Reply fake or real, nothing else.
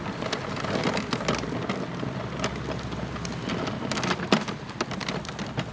real